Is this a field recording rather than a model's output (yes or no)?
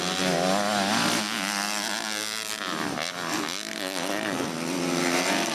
yes